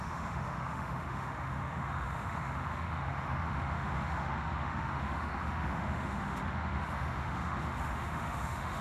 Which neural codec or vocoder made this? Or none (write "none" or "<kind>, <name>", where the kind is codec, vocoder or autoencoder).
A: autoencoder, DAC-VAE